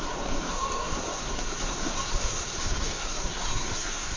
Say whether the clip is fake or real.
fake